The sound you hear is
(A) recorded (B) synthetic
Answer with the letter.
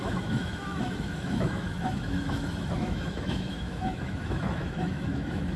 B